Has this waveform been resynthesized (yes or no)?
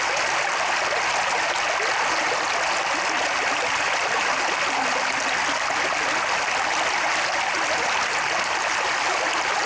no